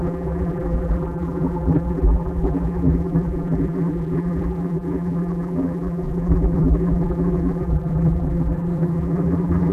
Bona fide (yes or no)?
no